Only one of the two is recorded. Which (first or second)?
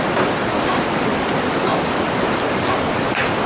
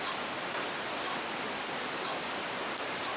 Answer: second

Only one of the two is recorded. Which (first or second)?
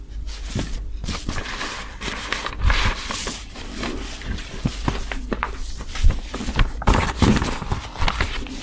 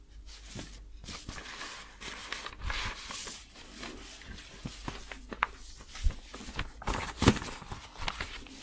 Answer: second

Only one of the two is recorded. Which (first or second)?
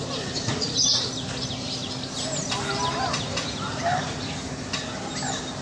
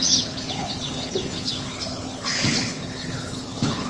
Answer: first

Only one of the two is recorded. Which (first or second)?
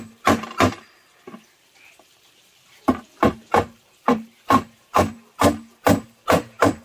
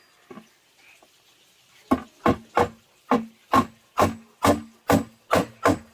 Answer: second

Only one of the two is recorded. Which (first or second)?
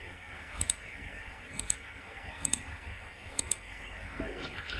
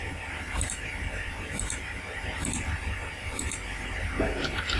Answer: second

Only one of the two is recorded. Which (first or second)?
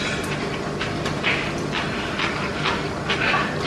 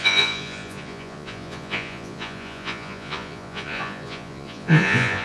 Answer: first